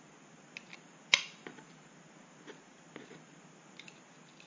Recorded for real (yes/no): yes